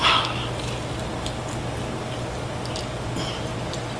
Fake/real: real